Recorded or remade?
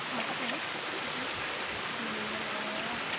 recorded